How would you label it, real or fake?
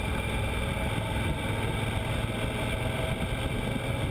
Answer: real